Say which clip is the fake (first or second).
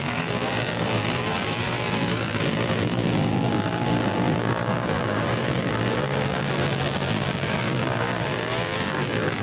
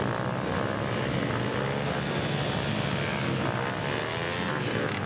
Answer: first